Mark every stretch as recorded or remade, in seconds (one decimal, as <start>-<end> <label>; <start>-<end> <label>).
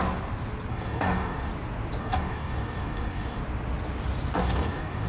0.0-0.7 recorded; 0.7-1.5 remade; 1.5-2.0 recorded; 2.0-3.4 remade; 3.4-4.4 recorded; 4.4-5.1 remade